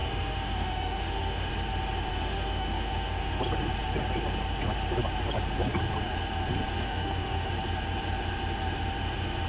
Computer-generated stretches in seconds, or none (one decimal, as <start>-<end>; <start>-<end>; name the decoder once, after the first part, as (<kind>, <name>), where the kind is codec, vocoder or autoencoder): 0.0-1.5 (autoencoder, DAC-VAE); 2.1-3.4; 6.8-7.5